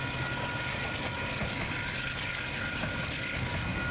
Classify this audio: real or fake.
real